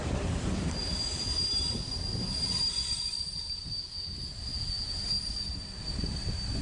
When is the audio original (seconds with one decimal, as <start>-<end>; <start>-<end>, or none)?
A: 3.3-6.6